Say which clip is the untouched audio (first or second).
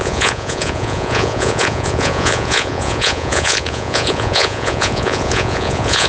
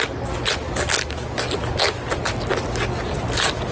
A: second